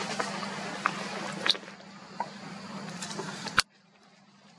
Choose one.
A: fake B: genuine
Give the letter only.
B